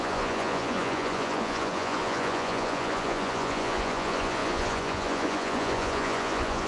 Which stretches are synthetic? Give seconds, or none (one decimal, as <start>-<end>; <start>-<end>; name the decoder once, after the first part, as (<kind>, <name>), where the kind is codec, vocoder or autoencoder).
0.0-6.7 (vocoder, Vocos)